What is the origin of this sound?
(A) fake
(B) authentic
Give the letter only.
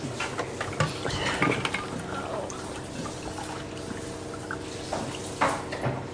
B